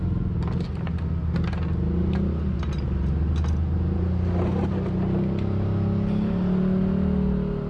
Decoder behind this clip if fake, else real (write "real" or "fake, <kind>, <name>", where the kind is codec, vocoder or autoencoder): real